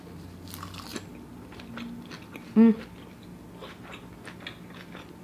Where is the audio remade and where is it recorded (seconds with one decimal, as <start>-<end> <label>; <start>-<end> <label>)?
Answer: 0.0-5.2 recorded